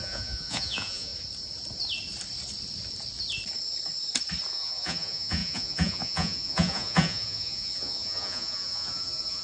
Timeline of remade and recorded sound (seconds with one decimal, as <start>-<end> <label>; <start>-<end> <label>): 0.0-1.1 remade; 1.1-4.5 recorded; 4.5-9.4 remade